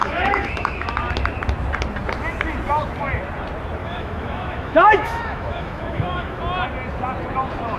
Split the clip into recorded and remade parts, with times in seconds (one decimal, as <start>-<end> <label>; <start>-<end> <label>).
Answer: 0.0-1.0 remade; 1.0-3.8 recorded; 3.8-6.4 remade; 6.4-7.8 recorded